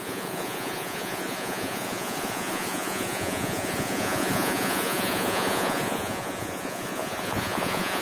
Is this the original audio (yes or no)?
no